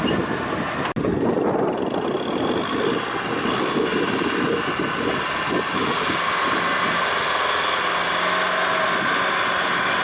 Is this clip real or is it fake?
real